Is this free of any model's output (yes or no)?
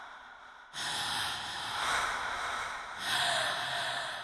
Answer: yes